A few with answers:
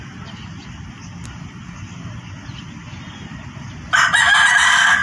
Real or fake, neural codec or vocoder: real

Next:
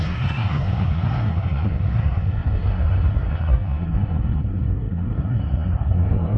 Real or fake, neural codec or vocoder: fake, codec, SNAC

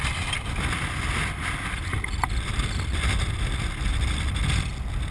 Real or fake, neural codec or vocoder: real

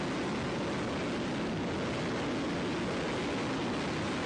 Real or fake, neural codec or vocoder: real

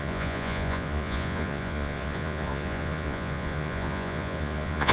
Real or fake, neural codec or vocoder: fake, vocoder, Vocos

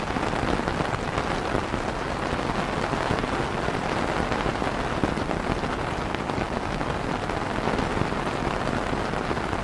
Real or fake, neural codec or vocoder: real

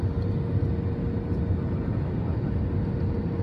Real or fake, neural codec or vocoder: real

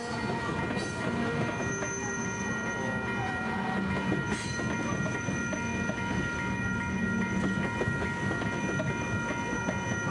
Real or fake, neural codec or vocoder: real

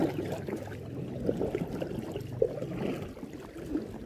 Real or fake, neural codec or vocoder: real